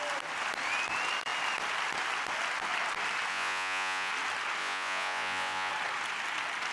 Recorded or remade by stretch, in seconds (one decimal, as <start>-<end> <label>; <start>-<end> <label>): 0.0-3.3 recorded; 3.3-4.1 remade; 4.1-4.6 recorded; 4.6-5.7 remade; 5.7-6.7 recorded